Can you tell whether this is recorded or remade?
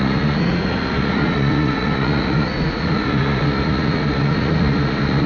remade